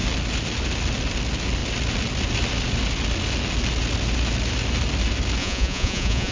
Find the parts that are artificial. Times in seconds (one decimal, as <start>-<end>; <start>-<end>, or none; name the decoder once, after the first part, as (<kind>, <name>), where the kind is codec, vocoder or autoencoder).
5.4-6.3 (vocoder, Vocos)